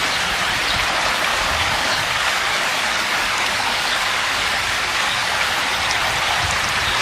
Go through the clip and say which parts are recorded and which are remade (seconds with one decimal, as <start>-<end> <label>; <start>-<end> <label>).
0.0-1.3 recorded; 1.3-5.3 remade; 5.3-7.0 recorded